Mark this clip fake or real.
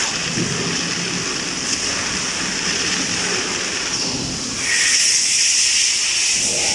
real